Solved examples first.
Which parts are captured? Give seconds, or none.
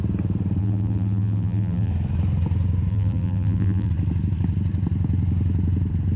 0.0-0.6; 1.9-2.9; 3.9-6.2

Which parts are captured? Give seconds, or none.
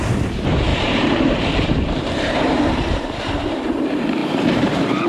0.0-0.7; 3.8-4.2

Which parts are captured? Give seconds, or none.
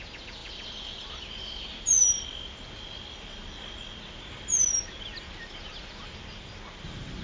0.0-7.2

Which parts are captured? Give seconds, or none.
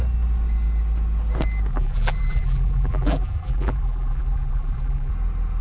0.0-1.7; 5.1-5.6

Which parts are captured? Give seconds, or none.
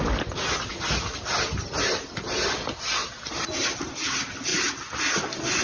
0.0-5.6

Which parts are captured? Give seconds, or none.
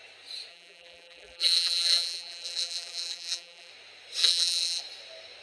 0.0-0.5; 3.7-4.2; 4.8-5.4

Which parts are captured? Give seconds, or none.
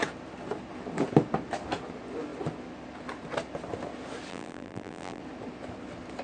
0.0-4.3; 5.2-6.2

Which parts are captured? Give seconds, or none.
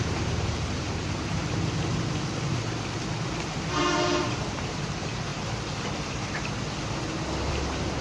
1.4-3.8; 5.3-7.5